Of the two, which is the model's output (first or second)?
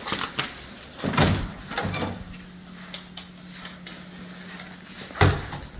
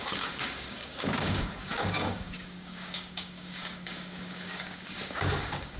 second